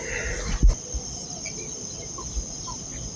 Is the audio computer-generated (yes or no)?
no